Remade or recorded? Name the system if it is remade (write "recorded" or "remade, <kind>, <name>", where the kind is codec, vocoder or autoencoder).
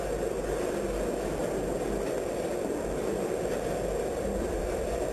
recorded